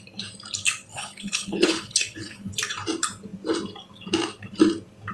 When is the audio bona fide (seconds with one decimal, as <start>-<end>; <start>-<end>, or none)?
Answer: 0.0-0.9; 2.5-5.1